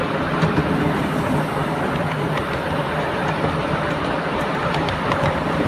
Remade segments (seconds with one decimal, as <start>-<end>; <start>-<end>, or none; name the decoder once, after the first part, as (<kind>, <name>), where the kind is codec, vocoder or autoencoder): none